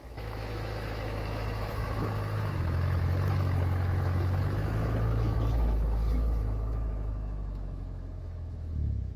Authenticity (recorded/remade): remade